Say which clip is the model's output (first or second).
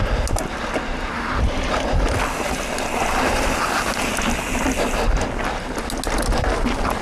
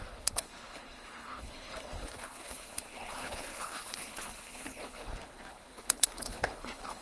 second